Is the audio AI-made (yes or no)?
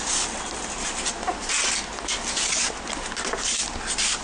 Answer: no